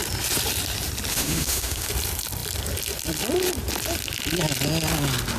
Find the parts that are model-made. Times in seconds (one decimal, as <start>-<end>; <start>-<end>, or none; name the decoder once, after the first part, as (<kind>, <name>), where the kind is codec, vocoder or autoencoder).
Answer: 1.1-1.9 (autoencoder, DAC-VAE)